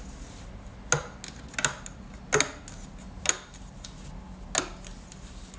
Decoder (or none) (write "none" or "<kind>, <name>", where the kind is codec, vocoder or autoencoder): none